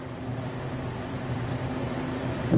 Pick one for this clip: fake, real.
fake